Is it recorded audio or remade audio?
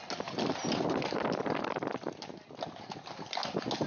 recorded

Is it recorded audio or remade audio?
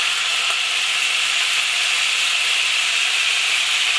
remade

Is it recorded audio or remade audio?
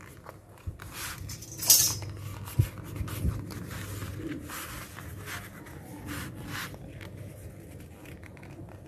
recorded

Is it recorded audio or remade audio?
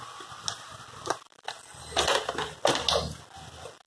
recorded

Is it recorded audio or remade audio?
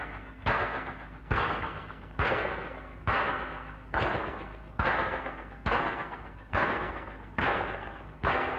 remade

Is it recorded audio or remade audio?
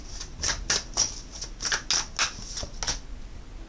recorded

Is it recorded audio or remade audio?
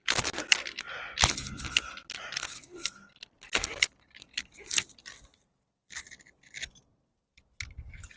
recorded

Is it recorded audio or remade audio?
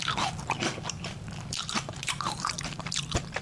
remade